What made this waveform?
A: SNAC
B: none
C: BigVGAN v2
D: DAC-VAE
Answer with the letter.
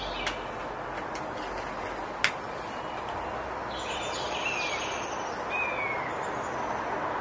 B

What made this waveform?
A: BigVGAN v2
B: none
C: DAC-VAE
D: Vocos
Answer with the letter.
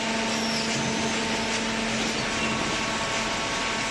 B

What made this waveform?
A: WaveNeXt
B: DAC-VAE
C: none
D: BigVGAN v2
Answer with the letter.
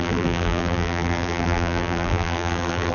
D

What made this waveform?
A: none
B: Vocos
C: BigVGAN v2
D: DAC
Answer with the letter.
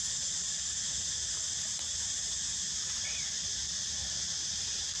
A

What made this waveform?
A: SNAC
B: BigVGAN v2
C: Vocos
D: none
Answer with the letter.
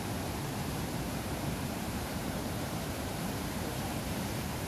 B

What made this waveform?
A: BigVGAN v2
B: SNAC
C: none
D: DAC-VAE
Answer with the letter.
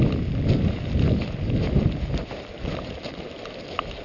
C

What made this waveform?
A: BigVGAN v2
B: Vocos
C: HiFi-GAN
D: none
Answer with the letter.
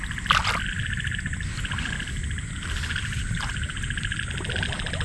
D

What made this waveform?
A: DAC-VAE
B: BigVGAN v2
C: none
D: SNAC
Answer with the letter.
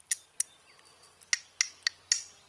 C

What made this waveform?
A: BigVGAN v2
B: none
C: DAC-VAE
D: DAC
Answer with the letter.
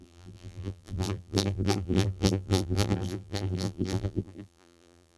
A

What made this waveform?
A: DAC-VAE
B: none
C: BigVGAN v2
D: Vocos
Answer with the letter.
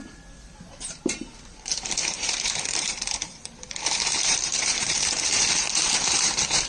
C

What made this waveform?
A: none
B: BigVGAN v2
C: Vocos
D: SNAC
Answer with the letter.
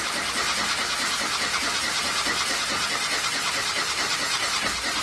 A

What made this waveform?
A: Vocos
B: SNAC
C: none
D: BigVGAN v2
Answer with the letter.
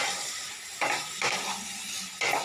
C